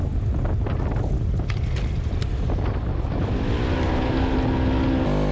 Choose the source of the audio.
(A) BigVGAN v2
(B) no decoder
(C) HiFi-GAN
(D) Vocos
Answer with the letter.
B